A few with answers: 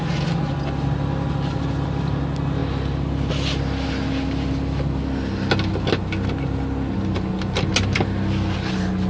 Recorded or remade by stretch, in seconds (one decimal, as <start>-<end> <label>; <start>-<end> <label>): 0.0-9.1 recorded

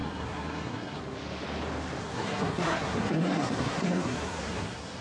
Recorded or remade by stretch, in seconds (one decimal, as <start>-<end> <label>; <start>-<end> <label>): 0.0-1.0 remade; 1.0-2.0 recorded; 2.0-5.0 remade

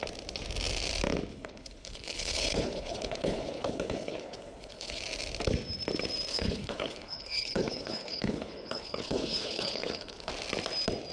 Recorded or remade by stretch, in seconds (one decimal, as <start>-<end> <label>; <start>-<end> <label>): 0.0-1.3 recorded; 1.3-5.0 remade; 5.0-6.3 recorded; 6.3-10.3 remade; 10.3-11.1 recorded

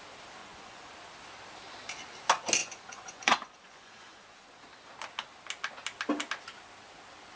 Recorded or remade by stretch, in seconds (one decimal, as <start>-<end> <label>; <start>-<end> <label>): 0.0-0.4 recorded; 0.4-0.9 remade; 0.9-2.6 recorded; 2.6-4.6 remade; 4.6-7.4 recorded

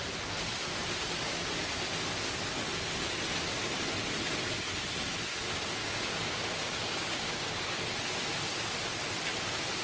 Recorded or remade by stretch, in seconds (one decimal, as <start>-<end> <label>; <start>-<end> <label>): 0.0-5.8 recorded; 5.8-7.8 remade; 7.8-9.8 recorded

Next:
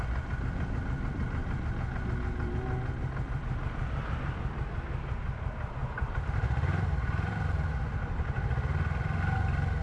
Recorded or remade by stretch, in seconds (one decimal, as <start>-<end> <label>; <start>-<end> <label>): 0.0-5.8 recorded; 5.8-8.1 remade; 8.1-9.8 recorded